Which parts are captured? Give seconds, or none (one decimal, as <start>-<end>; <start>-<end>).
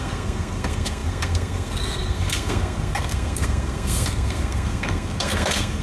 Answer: none